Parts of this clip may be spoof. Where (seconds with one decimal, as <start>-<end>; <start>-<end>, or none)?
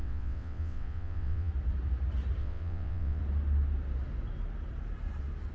0.0-1.5; 2.4-3.2